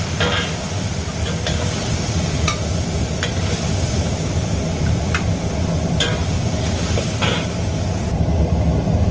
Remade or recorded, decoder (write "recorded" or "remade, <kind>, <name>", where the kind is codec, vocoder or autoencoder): remade, vocoder, BigVGAN v2